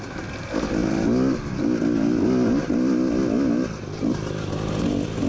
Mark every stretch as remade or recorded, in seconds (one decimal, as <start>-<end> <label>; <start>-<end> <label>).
0.0-5.3 recorded